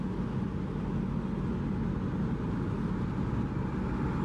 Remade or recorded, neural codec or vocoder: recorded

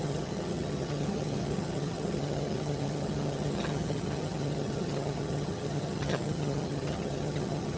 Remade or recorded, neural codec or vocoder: remade, vocoder, HiFi-GAN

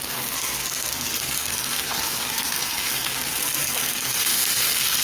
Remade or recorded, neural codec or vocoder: remade, codec, SNAC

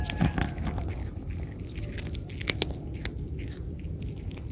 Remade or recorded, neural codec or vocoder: recorded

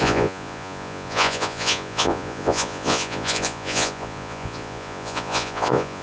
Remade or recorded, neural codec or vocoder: remade, vocoder, Vocos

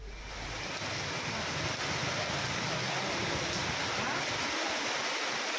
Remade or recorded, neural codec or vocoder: recorded